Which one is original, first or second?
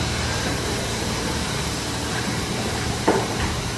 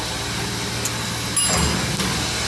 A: second